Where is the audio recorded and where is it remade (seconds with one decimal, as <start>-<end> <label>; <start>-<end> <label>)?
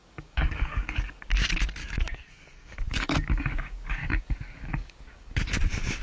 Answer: 0.0-1.3 remade; 1.3-1.8 recorded; 1.8-5.4 remade; 5.4-6.0 recorded